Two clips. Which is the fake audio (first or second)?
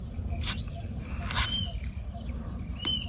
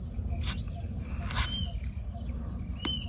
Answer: first